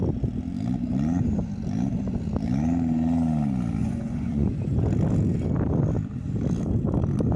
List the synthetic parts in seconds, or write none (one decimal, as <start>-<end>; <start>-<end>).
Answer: 3.8-4.6